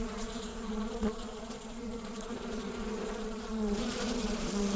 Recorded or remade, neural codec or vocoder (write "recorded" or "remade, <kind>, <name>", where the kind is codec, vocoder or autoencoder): remade, vocoder, Vocos